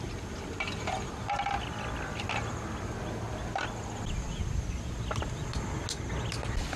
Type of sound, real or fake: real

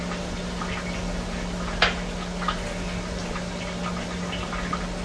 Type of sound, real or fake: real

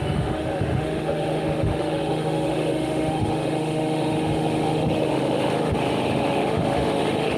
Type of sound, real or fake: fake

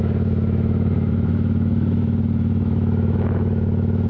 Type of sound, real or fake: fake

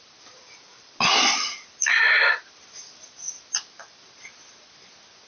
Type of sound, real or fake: real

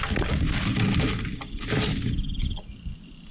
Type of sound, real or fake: real